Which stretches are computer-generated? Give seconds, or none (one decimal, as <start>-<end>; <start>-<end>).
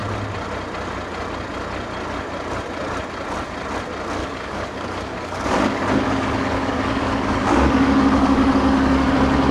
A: 4.2-9.1